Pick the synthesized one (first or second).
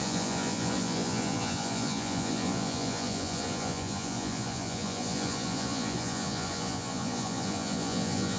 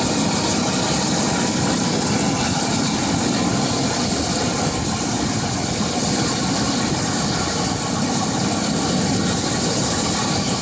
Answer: first